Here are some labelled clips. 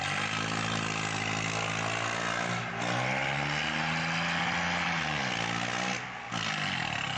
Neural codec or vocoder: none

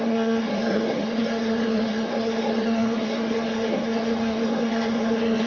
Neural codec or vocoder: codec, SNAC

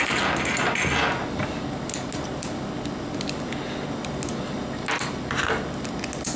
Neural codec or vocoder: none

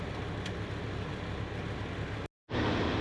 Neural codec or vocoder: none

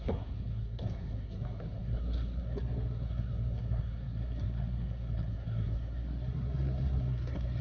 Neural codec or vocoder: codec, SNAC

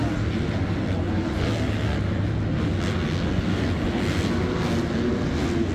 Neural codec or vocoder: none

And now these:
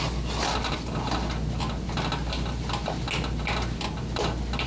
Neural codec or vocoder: none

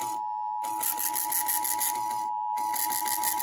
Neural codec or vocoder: none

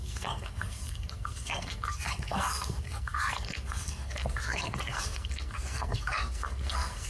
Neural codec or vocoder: codec, SNAC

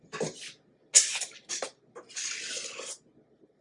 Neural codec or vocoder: none